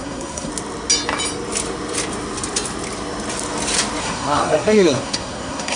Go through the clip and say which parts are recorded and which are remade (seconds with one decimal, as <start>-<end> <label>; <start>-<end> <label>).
0.0-0.5 remade; 0.5-4.0 recorded; 4.0-5.8 remade